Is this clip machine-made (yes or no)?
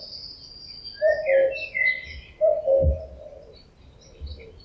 no